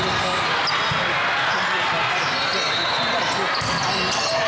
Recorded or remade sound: recorded